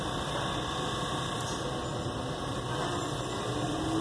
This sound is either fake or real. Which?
real